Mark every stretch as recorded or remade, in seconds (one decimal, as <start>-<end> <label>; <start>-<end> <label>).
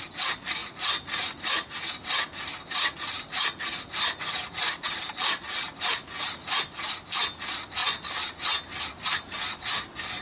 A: 0.0-10.2 recorded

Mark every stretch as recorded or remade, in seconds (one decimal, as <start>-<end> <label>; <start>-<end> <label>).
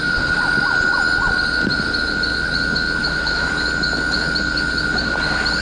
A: 0.0-3.0 recorded; 3.0-3.5 remade; 3.5-5.6 recorded